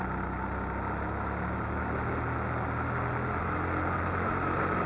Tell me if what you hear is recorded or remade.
recorded